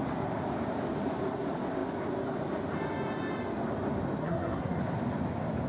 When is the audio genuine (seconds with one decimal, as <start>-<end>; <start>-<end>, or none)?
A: 0.0-4.2; 4.8-5.7